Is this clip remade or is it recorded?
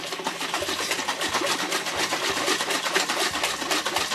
recorded